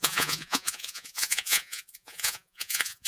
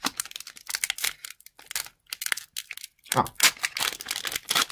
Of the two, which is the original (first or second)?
second